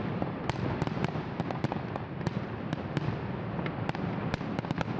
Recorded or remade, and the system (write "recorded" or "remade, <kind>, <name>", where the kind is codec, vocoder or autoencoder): recorded